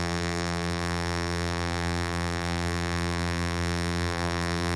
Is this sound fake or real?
fake